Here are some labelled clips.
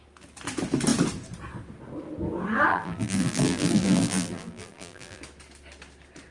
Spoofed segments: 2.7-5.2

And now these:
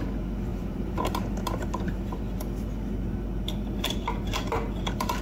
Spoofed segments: 0.5-2.2

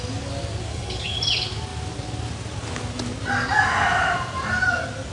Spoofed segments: 0.7-1.2

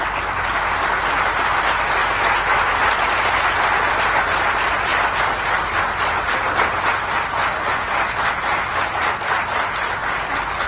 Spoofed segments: none

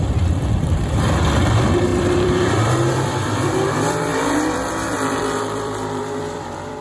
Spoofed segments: 0.0-6.8

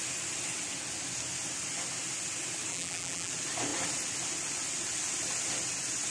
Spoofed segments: 2.7-3.3

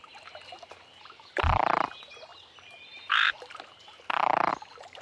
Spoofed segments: none

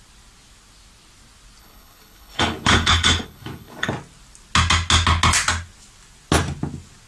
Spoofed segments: 1.6-3.9